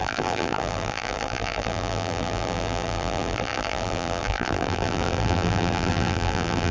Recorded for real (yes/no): no